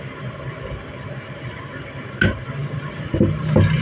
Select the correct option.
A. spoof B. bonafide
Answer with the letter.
B